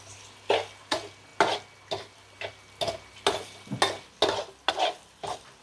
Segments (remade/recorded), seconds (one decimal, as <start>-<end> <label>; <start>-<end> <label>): 0.0-5.6 recorded